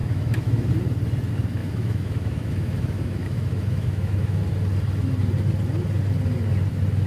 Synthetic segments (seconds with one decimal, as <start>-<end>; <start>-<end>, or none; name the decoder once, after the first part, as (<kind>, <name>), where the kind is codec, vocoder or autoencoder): 0.0-0.7 (autoencoder, DAC-VAE); 1.6-4.4